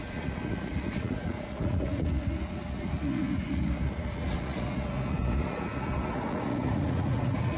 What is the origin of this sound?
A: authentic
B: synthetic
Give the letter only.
B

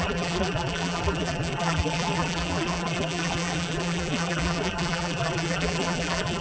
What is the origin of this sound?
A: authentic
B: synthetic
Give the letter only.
B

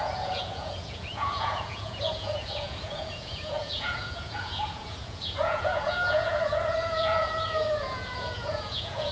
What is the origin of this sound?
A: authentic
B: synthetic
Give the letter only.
B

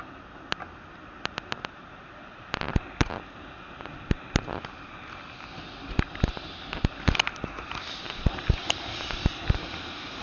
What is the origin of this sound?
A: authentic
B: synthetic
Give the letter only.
A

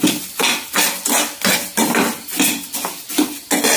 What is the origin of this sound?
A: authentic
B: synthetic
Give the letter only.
A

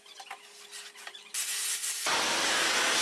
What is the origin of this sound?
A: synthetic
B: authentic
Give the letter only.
B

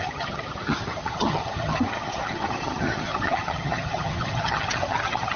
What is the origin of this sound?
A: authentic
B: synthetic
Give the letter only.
B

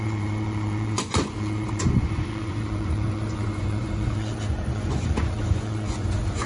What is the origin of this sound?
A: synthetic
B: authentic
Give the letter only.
A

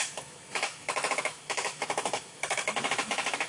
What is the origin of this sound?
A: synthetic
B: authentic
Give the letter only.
A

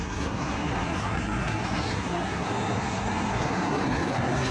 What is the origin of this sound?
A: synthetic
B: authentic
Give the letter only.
A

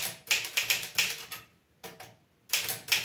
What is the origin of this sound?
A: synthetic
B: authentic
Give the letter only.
B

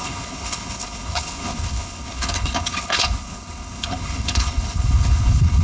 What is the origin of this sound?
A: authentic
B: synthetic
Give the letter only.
B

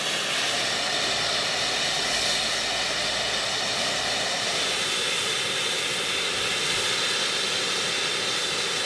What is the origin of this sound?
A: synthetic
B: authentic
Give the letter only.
B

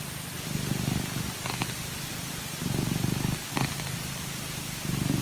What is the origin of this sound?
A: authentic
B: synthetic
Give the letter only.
A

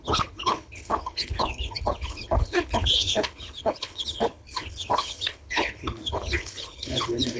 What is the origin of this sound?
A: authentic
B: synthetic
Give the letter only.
B